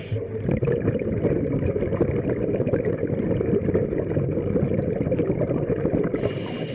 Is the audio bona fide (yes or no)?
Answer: yes